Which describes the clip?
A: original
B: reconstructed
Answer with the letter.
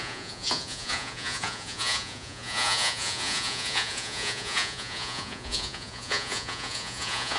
B